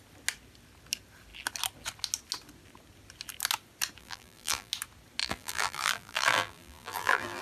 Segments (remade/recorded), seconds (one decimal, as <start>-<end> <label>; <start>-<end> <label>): 0.0-4.0 recorded; 4.0-4.7 remade; 4.7-5.2 recorded; 5.2-7.4 remade